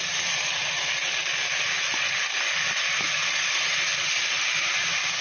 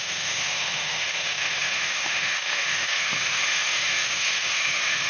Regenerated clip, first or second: second